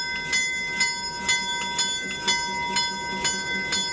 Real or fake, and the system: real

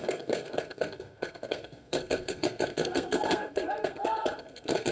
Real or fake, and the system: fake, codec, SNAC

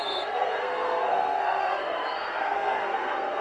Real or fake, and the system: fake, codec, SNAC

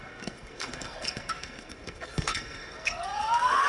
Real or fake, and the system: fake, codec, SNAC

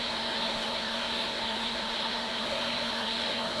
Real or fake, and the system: fake, codec, SNAC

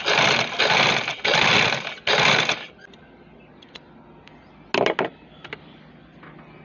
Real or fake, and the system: real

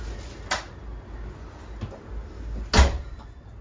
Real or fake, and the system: real